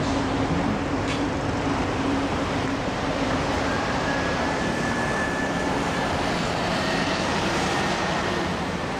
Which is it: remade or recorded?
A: remade